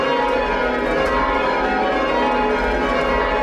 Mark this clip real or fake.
real